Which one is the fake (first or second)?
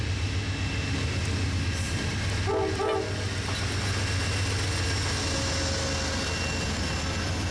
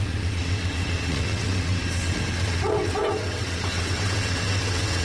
second